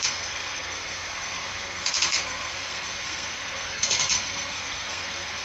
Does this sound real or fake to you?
fake